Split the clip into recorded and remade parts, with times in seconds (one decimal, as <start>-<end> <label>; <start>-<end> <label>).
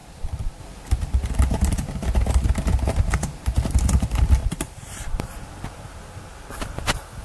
0.0-0.6 remade; 0.6-4.4 recorded; 4.4-5.3 remade; 5.3-7.2 recorded